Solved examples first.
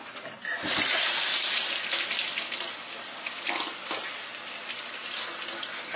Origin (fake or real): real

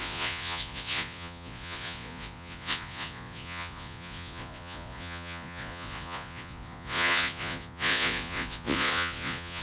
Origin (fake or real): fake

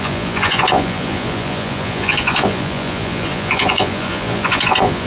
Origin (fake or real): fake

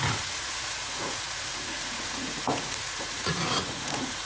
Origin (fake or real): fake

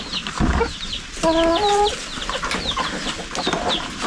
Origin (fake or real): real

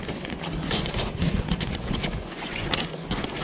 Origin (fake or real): fake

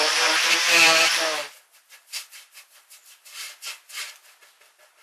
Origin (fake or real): fake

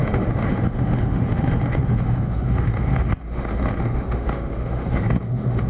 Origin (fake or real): fake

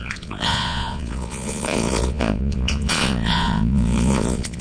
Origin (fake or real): fake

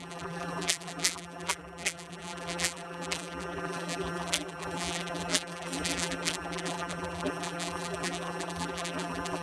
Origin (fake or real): fake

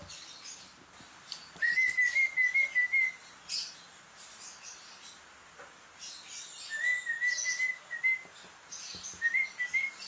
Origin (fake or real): real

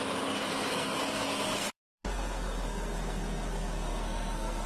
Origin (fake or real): fake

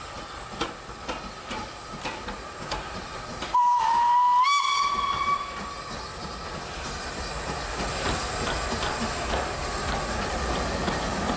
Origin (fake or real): real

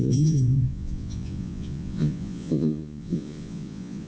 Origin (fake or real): fake